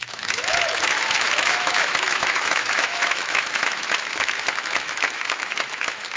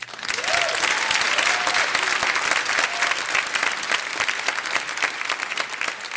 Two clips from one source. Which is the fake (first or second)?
first